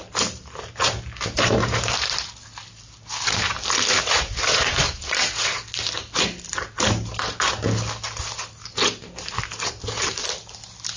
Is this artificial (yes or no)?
no